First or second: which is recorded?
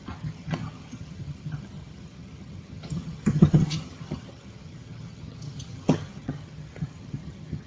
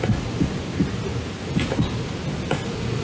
second